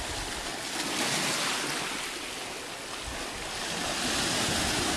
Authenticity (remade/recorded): recorded